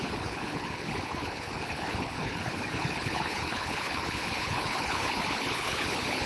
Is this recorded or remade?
remade